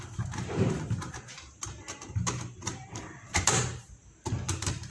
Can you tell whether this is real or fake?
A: fake